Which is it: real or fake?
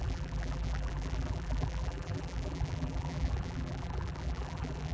fake